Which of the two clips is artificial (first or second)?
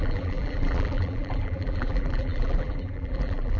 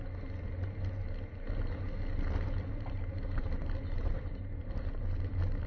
first